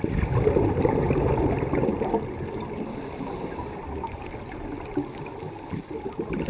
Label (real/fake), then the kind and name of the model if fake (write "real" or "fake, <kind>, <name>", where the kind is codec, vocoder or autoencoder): real